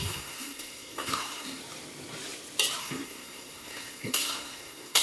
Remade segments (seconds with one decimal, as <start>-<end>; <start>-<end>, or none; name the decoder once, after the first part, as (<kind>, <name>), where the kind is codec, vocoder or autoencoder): 0.0-1.6 (codec, SNAC); 2.8-5.0